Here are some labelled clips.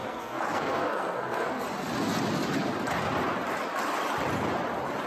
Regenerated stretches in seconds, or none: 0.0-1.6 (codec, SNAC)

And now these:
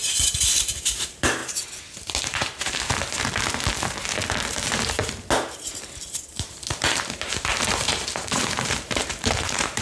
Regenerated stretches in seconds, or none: 0.6-1.4 (vocoder, BigVGAN v2); 6.3-9.8

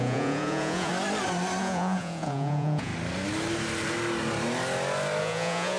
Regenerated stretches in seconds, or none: 0.0-0.9 (vocoder, Vocos); 1.6-2.9; 5.2-5.8

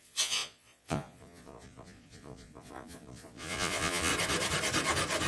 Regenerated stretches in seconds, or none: 0.0-4.1 (vocoder, Vocos)

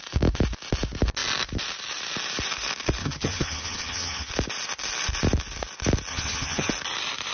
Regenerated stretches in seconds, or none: 3.0-4.3 (vocoder, HiFi-GAN); 6.1-6.7

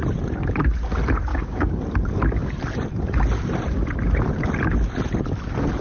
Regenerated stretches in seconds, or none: 1.3-1.8 (codec, DAC)

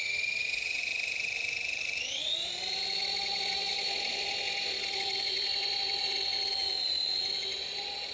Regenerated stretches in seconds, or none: 0.0-0.9 (vocoder, Vocos); 2.0-8.1

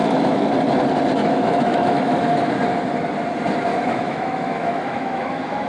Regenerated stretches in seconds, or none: 0.0-0.5 (autoencoder, DAC-VAE); 1.2-2.5; 3.7-5.7